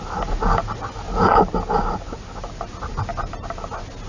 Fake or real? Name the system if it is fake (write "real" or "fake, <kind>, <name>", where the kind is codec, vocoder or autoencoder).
real